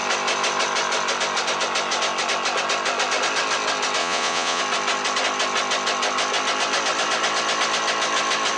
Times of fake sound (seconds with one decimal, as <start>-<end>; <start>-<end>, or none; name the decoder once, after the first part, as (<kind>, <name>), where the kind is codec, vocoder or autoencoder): 4.0-4.6 (vocoder, Vocos)